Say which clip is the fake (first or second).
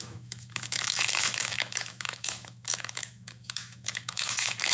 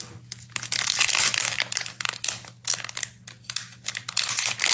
first